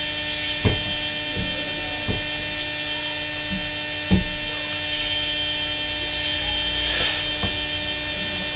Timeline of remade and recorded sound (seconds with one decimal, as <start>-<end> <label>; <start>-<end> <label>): 0.0-8.6 recorded